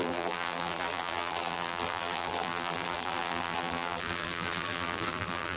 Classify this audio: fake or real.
fake